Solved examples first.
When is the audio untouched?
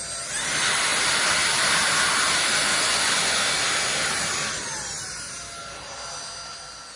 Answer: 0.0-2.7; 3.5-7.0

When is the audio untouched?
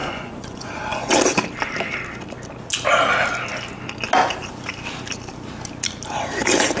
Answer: 1.1-6.8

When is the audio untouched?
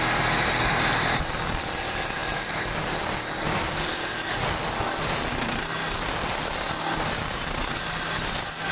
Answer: 0.0-8.7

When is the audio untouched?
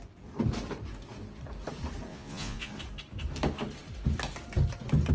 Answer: 0.0-2.1; 2.7-5.1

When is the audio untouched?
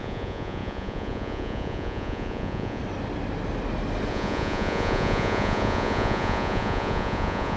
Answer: 2.8-4.1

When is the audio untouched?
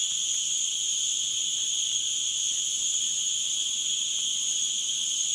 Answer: 0.0-5.3